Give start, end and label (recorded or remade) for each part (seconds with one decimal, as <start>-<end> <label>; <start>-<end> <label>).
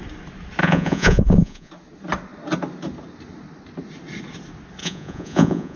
0.0-0.6 recorded; 0.6-1.7 remade; 1.7-4.8 recorded; 4.8-5.8 remade